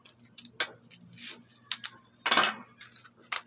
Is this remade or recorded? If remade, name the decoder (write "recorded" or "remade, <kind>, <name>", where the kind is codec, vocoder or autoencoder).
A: recorded